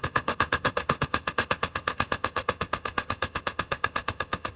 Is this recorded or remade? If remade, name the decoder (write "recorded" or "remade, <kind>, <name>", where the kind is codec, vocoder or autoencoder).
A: remade, codec, ZipCodec